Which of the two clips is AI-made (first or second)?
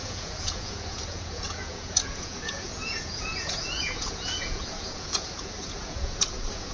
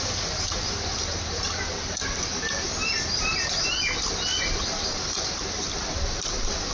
first